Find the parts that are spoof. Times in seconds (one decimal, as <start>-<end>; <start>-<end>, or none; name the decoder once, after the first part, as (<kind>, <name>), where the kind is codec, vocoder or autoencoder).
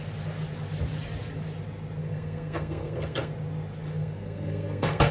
2.0-3.3 (codec, SNAC); 3.9-5.1